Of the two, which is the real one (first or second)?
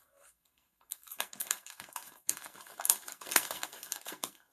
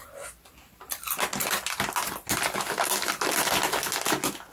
second